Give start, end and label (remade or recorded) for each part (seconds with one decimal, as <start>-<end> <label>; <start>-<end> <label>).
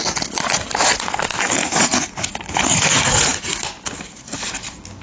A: 0.0-1.6 recorded; 1.6-3.5 remade; 3.5-5.0 recorded